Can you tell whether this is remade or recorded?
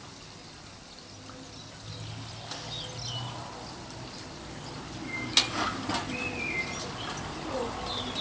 recorded